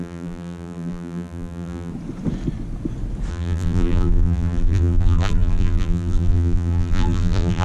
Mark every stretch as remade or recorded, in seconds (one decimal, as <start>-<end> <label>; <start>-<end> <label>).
0.0-1.9 remade; 1.9-3.3 recorded; 3.3-7.6 remade